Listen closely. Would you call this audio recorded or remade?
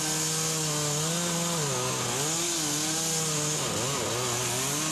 recorded